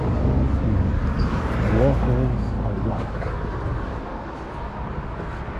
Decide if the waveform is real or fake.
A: fake